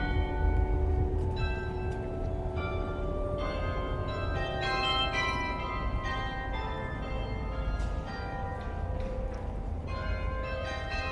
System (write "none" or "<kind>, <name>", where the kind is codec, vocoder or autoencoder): vocoder, BigVGAN v2